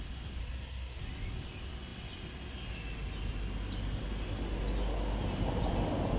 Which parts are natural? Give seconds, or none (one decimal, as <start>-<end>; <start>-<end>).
0.0-0.4; 1.0-6.2